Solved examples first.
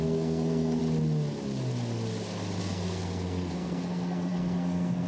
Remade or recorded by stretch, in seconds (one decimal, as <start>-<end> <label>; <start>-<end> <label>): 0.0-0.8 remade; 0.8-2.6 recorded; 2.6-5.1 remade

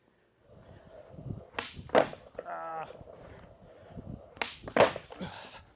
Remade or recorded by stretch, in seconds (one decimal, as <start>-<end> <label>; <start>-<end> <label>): 0.0-5.8 recorded

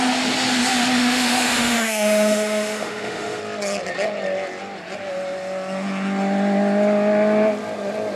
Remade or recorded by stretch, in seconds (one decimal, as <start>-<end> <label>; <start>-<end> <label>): 0.0-1.0 recorded; 1.0-3.4 remade; 3.4-8.2 recorded

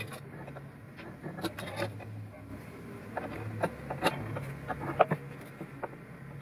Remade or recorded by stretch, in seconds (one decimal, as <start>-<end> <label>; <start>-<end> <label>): 0.0-6.4 recorded

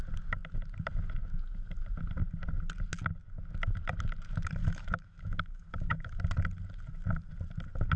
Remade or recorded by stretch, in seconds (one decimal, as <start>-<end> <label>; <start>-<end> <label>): 0.0-4.6 recorded; 4.6-6.2 remade; 6.2-8.0 recorded